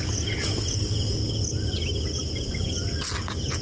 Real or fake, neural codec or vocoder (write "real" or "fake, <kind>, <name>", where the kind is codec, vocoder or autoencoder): real